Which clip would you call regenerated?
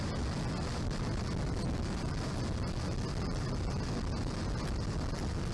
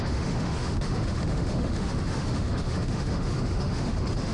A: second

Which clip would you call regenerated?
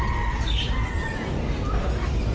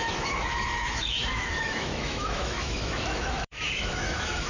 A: second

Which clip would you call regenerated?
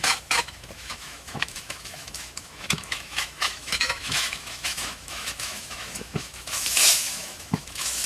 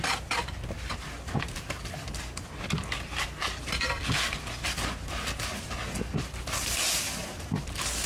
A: first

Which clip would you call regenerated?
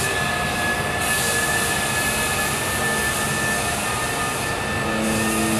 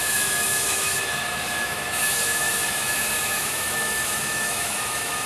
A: second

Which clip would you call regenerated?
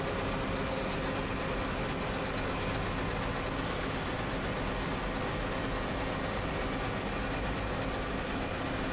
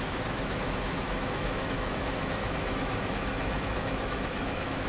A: second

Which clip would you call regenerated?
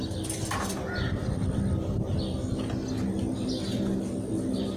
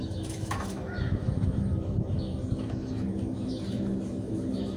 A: second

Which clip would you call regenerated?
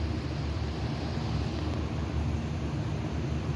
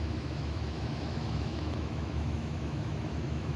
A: second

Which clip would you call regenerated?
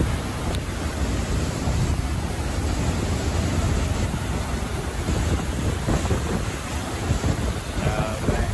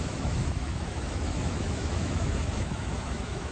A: second